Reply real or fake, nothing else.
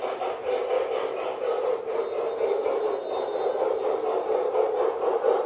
real